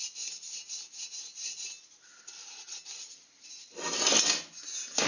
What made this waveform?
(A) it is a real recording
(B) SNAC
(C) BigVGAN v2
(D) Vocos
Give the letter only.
A